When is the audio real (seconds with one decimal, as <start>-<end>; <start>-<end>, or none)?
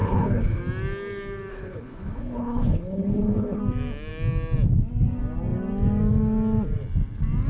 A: 0.6-1.5; 3.6-7.5